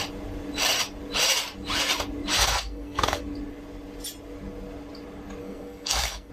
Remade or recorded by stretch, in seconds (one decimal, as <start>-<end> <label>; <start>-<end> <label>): 0.0-2.3 recorded; 2.3-3.2 remade; 3.2-5.4 recorded; 5.4-6.3 remade